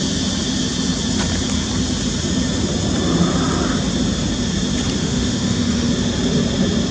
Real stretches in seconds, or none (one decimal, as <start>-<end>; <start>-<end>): 0.0-5.0; 5.9-6.9